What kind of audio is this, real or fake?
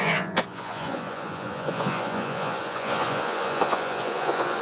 fake